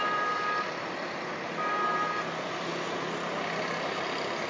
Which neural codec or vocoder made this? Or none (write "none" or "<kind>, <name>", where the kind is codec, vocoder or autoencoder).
none